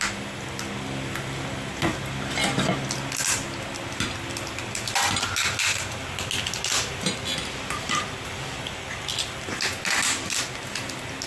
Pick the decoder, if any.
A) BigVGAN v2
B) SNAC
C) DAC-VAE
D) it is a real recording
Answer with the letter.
D